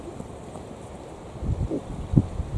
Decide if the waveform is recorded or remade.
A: recorded